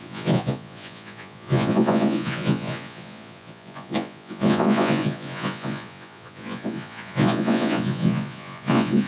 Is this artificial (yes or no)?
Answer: yes